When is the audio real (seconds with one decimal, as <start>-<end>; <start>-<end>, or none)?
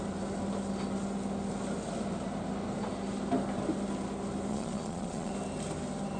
0.0-4.5; 5.3-6.2